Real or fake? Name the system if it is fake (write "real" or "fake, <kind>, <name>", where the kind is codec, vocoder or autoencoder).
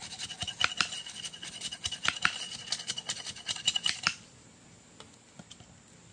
real